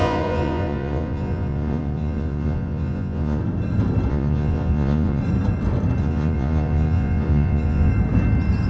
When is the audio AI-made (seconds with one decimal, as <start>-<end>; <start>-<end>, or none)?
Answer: 0.0-3.4; 4.1-5.2; 6.0-7.9